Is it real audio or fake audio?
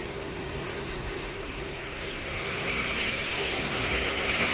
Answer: fake